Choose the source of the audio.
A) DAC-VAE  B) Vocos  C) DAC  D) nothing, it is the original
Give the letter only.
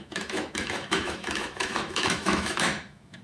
A